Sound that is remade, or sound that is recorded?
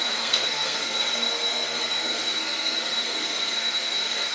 remade